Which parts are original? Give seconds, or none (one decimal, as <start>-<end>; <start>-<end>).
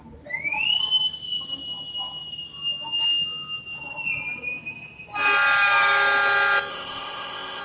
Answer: 0.0-6.7